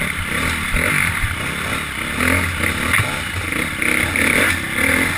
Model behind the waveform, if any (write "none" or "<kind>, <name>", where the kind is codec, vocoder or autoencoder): none